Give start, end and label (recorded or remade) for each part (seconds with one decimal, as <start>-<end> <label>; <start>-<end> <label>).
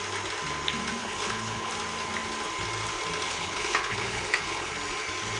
0.0-1.0 recorded; 1.0-1.7 remade; 1.7-3.3 recorded; 3.3-4.7 remade; 4.7-5.4 recorded